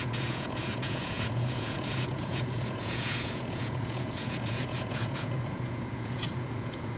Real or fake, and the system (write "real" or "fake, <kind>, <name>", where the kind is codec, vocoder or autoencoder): fake, vocoder, Vocos